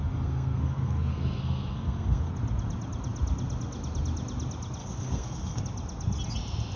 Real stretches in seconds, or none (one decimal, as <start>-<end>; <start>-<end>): 2.3-4.8; 5.6-6.8